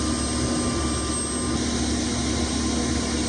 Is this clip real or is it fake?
real